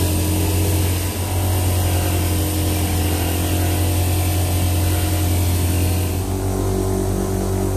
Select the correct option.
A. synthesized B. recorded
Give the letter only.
B